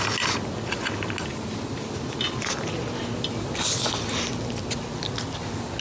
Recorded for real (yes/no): yes